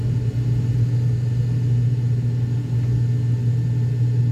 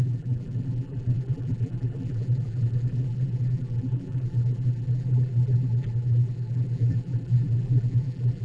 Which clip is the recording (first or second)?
first